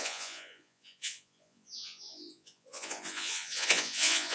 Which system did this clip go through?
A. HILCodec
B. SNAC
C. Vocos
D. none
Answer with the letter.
C